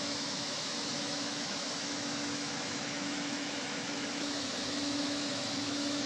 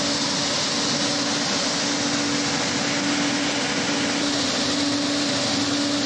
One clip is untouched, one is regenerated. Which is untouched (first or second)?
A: second